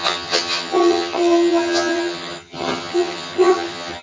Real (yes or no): no